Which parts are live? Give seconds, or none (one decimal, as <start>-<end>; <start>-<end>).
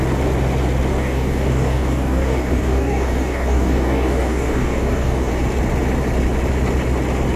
0.0-0.9; 5.3-7.4